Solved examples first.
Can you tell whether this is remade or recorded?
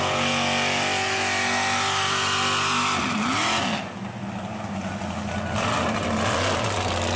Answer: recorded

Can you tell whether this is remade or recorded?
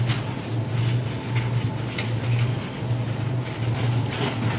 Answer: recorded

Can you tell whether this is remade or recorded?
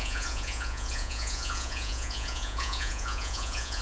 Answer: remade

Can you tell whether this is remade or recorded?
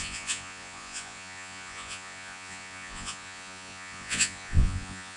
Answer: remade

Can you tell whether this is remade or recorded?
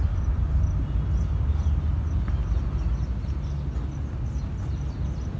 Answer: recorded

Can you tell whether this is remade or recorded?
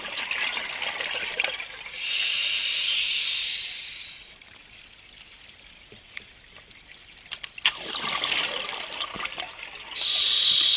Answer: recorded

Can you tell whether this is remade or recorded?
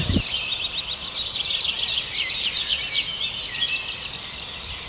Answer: recorded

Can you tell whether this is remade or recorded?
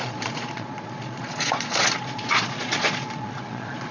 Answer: remade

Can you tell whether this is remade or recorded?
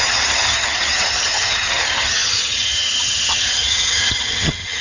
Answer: remade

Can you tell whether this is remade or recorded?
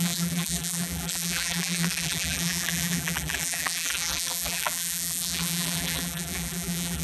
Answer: remade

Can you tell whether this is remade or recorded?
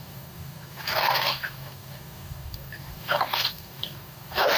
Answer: remade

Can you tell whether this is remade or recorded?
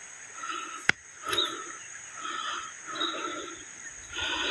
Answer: recorded